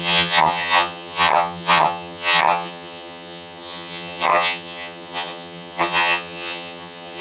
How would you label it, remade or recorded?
remade